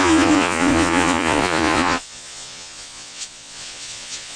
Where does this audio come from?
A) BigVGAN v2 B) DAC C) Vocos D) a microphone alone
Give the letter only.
C